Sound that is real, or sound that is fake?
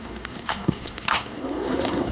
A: fake